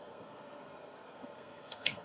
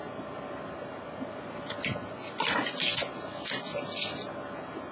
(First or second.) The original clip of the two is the second